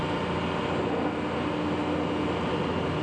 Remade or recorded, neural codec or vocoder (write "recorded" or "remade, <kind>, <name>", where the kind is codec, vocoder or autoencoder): recorded